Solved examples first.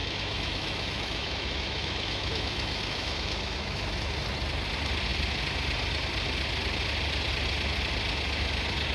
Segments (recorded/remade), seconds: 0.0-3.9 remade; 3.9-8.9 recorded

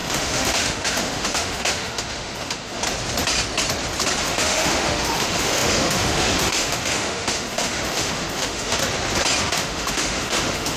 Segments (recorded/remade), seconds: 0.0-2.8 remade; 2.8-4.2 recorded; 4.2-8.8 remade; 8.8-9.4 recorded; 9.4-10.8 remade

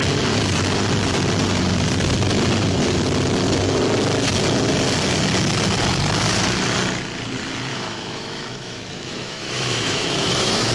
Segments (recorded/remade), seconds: 0.0-7.7 recorded; 7.7-10.7 remade

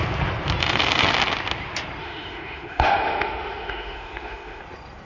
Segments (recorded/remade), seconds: 0.0-2.0 recorded; 2.0-4.6 remade; 4.6-5.1 recorded

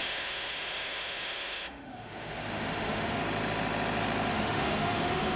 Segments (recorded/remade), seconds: 0.0-3.2 remade; 3.2-4.3 recorded; 4.3-5.4 remade

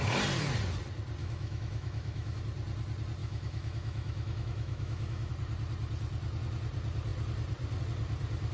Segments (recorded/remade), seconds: 0.0-1.2 recorded; 1.2-2.4 remade; 2.4-3.2 recorded; 3.2-5.3 remade; 5.3-8.5 recorded

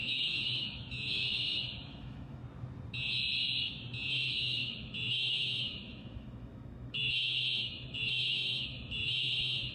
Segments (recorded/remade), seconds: 0.0-2.4 remade; 2.4-4.1 recorded; 4.1-9.7 remade